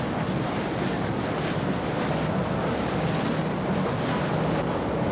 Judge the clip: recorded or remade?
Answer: recorded